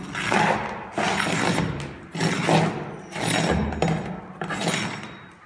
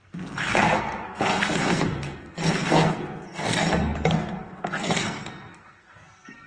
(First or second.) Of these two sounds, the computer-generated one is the second